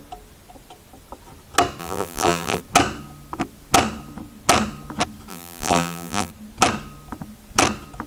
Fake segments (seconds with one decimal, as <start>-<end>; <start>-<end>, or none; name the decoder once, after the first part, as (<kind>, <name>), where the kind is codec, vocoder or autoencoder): 1.8-2.6 (vocoder, BigVGAN v2); 5.3-6.3